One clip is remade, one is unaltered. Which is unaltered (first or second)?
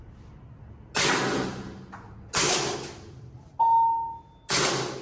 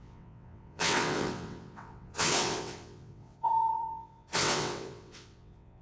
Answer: first